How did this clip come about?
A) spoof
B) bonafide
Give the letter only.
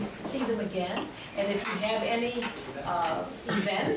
B